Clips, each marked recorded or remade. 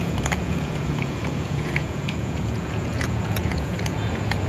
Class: remade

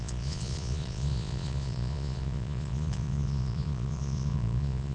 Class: remade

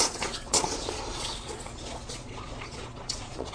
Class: remade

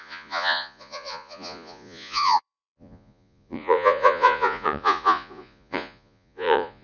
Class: remade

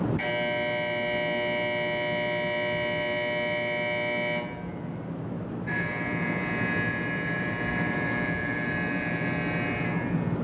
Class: recorded